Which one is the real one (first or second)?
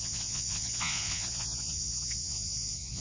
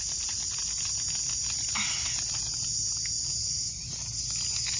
second